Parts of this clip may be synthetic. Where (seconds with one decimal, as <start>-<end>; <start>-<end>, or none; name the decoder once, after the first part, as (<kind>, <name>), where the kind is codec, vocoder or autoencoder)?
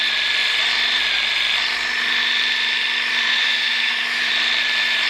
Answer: 3.3-4.3 (autoencoder, DAC-VAE)